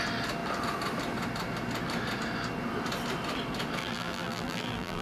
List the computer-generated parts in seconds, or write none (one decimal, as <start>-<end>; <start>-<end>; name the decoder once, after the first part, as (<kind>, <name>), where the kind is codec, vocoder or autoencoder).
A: 3.8-5.0 (vocoder, BigVGAN v2)